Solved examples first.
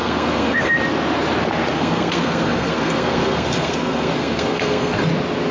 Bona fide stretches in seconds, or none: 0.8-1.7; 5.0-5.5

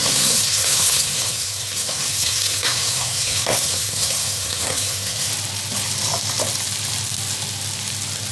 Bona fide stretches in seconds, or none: 5.3-8.3

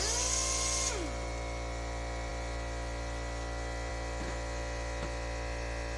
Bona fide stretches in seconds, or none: 0.0-6.0

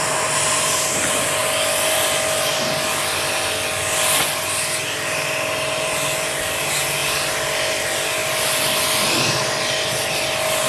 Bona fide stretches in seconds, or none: 0.0-10.7

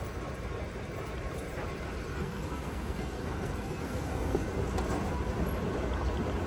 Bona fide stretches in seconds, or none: 0.0-2.1; 4.4-6.5

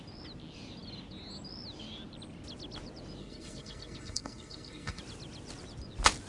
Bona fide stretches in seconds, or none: 0.0-3.2; 5.0-6.3

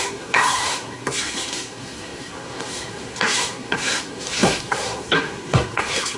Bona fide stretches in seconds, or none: none

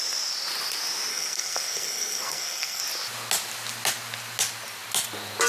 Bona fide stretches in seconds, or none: 0.0-1.1; 2.8-5.5